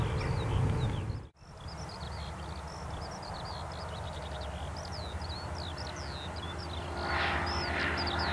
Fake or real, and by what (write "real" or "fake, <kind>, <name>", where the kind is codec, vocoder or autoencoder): real